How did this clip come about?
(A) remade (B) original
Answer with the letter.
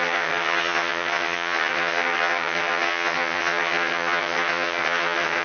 A